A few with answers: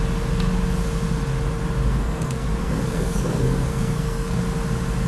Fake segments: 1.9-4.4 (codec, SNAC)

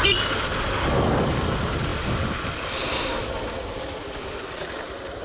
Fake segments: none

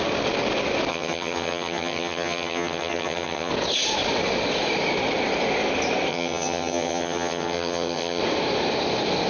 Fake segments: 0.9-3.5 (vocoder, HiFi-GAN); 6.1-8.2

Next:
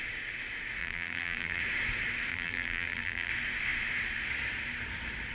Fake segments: 0.8-1.6 (vocoder, BigVGAN v2); 2.3-3.3

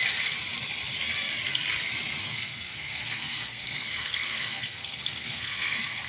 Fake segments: 2.2-6.1 (codec, SNAC)

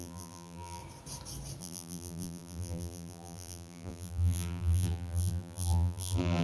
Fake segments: 0.0-0.8 (vocoder, BigVGAN v2); 1.6-6.4